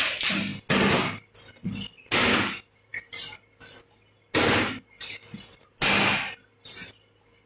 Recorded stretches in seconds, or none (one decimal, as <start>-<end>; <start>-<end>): 0.0-7.5